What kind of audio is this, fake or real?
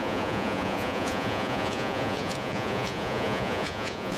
fake